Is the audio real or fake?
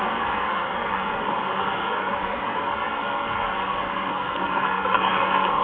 fake